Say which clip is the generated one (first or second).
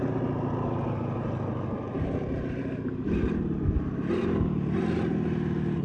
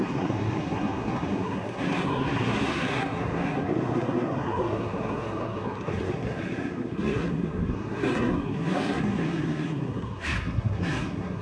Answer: second